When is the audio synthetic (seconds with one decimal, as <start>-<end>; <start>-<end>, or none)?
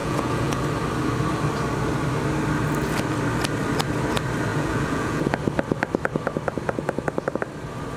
0.0-0.6; 4.5-5.3